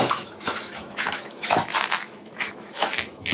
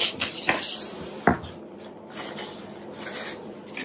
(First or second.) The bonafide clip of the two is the second